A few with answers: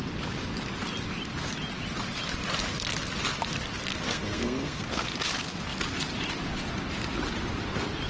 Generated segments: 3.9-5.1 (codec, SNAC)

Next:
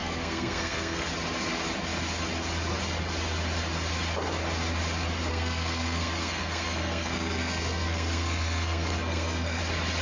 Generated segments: 0.0-1.1 (codec, SNAC); 5.3-9.6

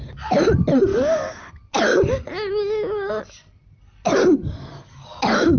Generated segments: none

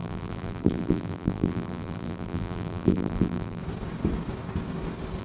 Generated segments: 0.0-3.6 (vocoder, BigVGAN v2)

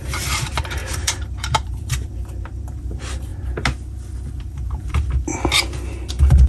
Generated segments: 0.0-3.3 (vocoder, BigVGAN v2); 4.4-5.3; 6.1-6.5